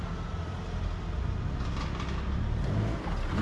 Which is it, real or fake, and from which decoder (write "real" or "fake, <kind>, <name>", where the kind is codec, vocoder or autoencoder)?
fake, vocoder, BigVGAN v2